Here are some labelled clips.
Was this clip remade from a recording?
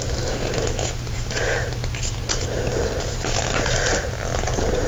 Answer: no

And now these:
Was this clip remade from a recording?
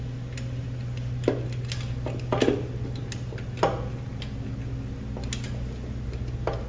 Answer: no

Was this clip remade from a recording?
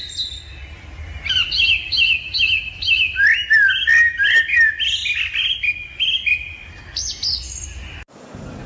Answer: no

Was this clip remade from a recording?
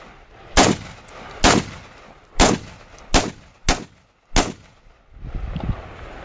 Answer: no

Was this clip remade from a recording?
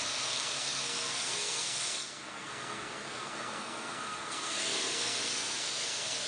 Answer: yes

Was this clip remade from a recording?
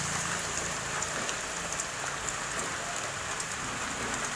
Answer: no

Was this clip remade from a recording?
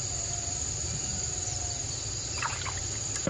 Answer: no